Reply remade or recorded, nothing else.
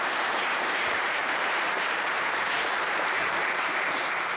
remade